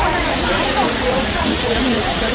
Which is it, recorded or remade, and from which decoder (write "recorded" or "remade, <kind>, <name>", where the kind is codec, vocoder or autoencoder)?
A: remade, vocoder, Vocos